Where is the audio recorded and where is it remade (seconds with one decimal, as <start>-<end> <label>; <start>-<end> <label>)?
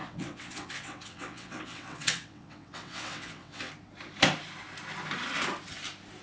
0.0-3.7 remade; 3.7-6.2 recorded